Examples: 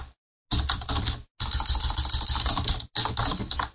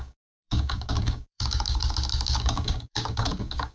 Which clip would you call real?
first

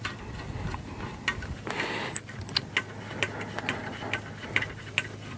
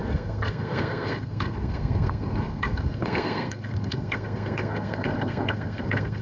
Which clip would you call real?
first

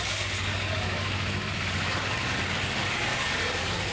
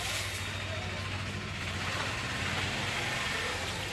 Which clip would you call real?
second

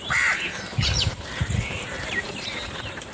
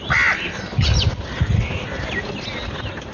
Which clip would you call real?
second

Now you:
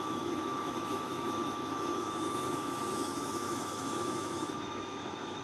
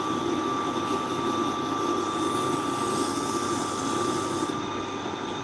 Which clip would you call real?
second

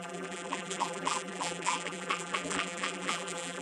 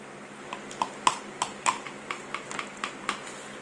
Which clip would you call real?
second